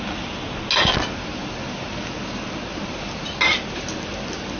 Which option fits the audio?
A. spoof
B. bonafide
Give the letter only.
B